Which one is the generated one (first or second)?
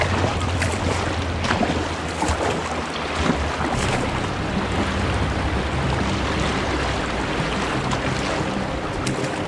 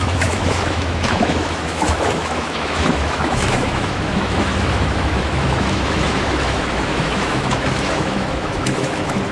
second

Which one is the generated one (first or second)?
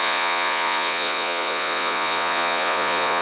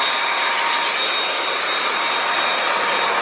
first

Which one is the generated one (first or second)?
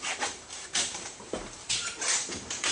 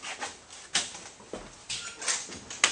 first